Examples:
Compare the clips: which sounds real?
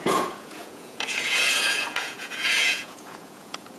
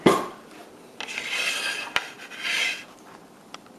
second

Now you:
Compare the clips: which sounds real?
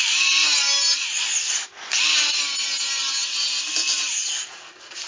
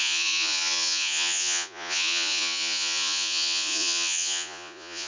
first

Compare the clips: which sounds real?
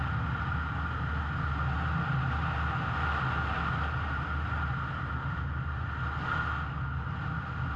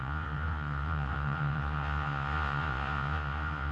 first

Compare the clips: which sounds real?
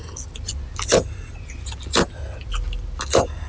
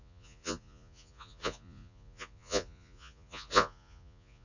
first